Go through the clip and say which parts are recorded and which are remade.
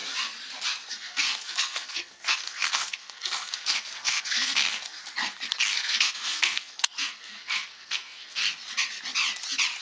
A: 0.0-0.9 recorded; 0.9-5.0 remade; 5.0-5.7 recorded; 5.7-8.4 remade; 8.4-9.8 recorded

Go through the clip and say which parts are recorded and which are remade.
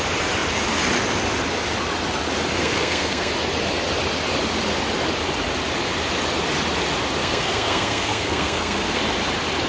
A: 0.0-2.6 recorded; 2.6-3.3 remade; 3.3-7.2 recorded; 7.2-9.0 remade; 9.0-9.7 recorded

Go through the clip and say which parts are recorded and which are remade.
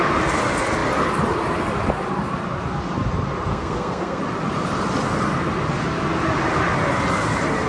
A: 0.0-3.5 recorded; 3.5-4.2 remade; 4.2-7.7 recorded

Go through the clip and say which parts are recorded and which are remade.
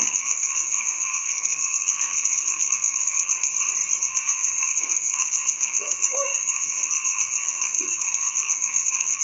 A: 0.0-3.5 remade; 3.5-4.0 recorded; 4.0-9.2 remade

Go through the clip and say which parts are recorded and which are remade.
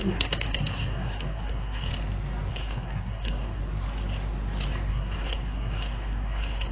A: 0.0-1.9 remade; 1.9-2.5 recorded; 2.5-3.6 remade; 3.6-4.9 recorded; 4.9-6.7 remade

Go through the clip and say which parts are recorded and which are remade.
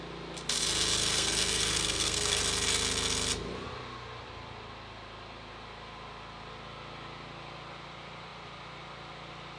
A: 0.0-1.0 recorded; 1.0-2.4 remade; 2.4-9.6 recorded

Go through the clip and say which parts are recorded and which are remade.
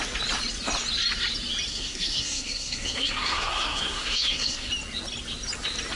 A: 0.0-1.7 recorded; 1.7-4.7 remade; 4.7-6.0 recorded